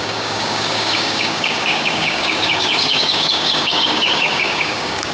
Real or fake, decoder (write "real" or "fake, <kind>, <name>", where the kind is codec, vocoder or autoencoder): fake, codec, DAC